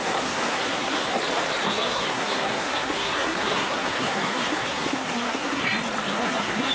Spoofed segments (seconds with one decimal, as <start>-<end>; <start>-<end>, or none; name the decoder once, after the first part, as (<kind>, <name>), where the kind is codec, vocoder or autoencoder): 0.0-1.2 (codec, SNAC); 1.6-5.6; 6.1-6.7